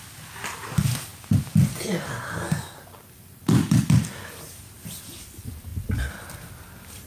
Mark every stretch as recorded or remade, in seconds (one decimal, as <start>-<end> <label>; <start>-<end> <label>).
0.0-7.1 recorded